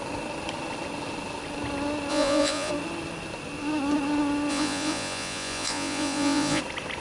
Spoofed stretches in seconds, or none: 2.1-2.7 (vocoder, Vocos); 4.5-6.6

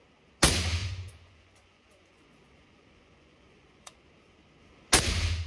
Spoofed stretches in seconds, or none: 0.8-4.1 (vocoder, Vocos)

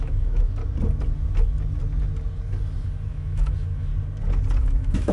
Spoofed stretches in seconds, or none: 0.0-0.6 (autoencoder, DAC-VAE); 3.1-3.9; 4.6-5.1

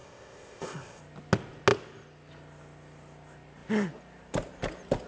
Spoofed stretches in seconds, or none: 0.0-1.0 (codec, ZipCodec)